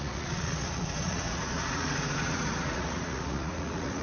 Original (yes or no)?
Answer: no